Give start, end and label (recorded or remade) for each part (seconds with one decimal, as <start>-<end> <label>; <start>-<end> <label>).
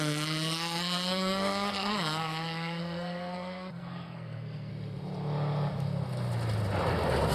0.0-4.7 remade; 4.7-7.3 recorded